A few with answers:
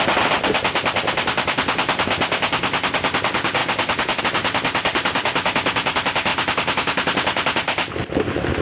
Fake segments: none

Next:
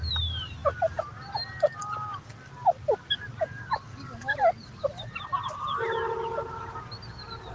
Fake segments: none

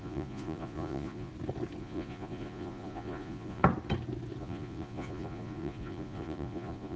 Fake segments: 0.0-1.3 (vocoder, Vocos); 1.8-3.6; 4.4-7.0

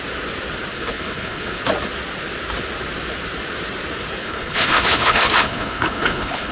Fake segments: 0.7-1.6 (codec, HILCodec); 4.2-6.5

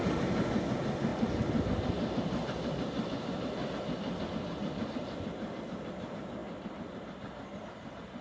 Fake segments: none

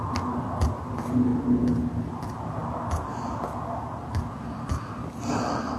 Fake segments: 0.0-1.3 (vocoder, BigVGAN v2); 2.0-2.6; 4.1-5.8

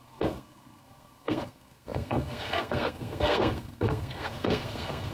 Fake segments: 0.0-5.1 (codec, SNAC)